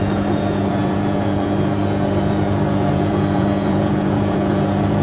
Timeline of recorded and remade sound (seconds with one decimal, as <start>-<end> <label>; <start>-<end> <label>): 0.0-5.0 remade